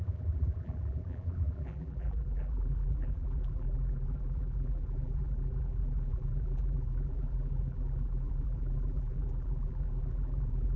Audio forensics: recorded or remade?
remade